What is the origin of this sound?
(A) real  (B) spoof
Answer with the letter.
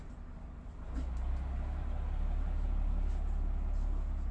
A